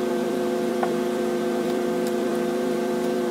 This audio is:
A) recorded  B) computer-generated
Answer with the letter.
B